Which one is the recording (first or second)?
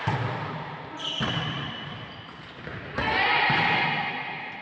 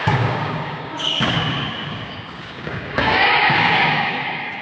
first